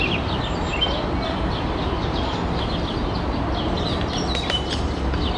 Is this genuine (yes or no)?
yes